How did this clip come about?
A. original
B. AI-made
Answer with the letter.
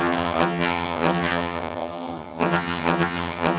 B